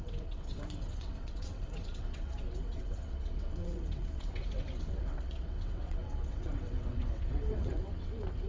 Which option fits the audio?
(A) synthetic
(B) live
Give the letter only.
A